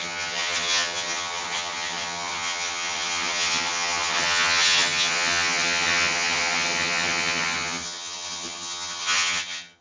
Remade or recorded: remade